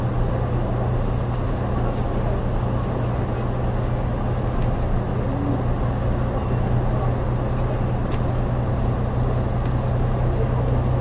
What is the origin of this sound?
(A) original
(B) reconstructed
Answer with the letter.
A